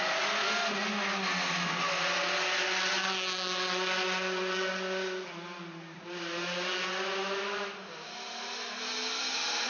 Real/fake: real